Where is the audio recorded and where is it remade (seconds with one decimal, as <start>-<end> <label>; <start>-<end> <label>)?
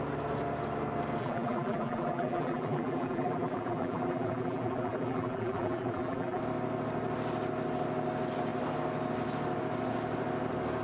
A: 0.0-1.2 recorded; 1.2-6.4 remade; 6.4-10.8 recorded